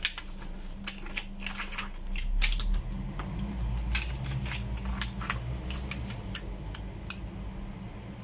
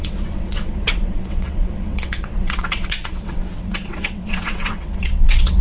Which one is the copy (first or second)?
second